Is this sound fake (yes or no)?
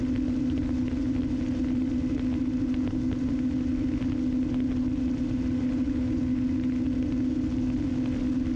no